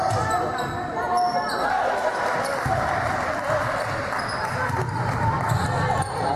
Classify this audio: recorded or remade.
recorded